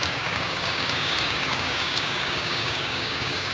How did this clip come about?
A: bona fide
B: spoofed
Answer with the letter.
B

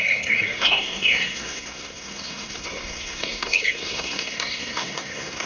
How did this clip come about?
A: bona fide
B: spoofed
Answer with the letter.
B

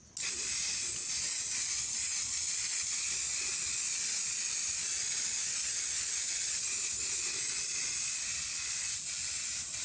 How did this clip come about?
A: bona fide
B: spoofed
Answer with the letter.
A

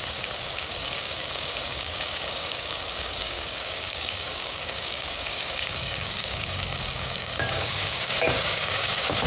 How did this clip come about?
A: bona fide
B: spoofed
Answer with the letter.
B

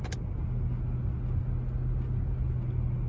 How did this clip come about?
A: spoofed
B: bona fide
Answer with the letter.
B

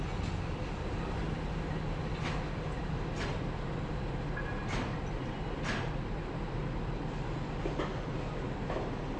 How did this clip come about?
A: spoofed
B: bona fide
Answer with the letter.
B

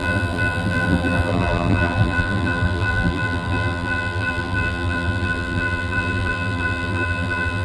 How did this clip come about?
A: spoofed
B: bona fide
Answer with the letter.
A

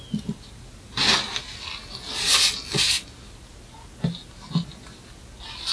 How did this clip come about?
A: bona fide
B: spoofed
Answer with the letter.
A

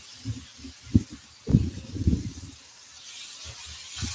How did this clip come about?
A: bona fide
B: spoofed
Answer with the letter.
A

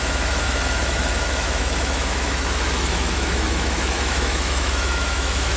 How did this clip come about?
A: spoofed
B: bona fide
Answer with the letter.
A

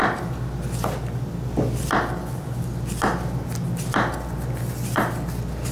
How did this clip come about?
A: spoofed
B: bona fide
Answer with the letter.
B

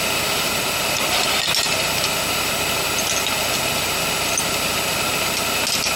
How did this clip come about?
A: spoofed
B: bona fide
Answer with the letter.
B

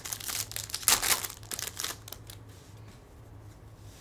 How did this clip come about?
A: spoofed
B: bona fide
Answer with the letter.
B